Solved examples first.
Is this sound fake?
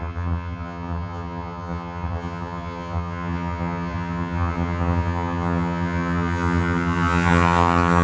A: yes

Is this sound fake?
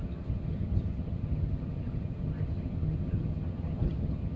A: yes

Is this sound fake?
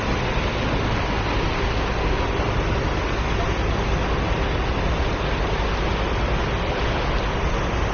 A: no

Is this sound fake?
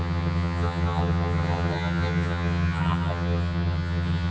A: yes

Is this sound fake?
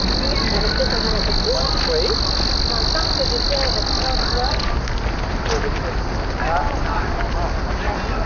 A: no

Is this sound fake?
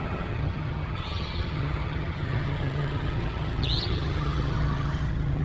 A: yes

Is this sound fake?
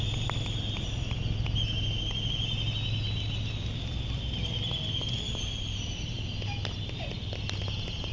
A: no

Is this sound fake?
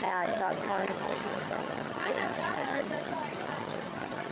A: yes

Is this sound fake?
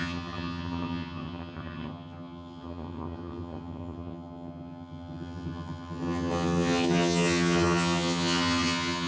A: yes